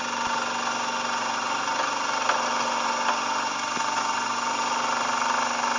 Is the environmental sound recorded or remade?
recorded